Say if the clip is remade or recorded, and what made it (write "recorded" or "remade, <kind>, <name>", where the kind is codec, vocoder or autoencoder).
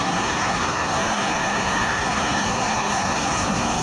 remade, codec, SNAC